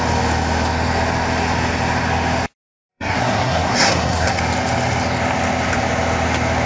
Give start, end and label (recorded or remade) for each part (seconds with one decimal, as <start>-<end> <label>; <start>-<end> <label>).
0.0-2.9 recorded; 2.9-4.4 remade; 4.4-6.7 recorded